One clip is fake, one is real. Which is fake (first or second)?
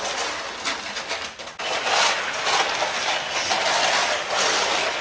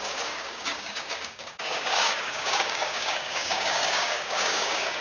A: second